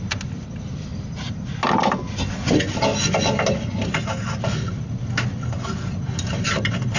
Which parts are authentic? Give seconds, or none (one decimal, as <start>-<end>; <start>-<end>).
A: 0.0-7.0

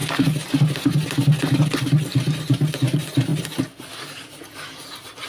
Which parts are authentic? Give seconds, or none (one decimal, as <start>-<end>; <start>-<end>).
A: 0.0-3.3

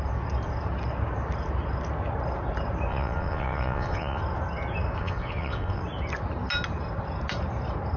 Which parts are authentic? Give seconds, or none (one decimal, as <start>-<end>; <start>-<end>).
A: 0.0-2.9; 4.2-5.0; 5.8-8.0

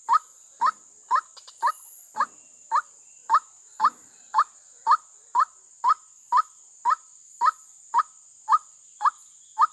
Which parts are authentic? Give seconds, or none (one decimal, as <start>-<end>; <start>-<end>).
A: 0.0-1.0; 1.7-3.2; 3.8-9.7

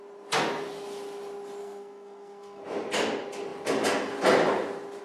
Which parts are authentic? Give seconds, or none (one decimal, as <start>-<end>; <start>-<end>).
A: 0.0-1.6; 2.6-5.0

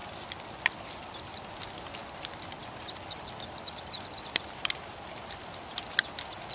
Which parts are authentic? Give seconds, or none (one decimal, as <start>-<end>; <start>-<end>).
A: 0.0-2.0; 5.7-6.5